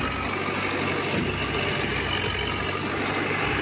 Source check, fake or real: real